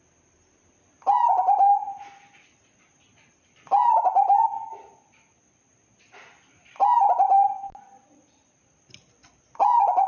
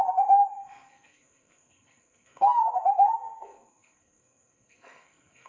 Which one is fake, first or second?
second